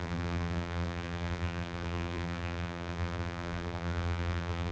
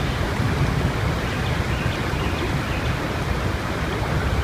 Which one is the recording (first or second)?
second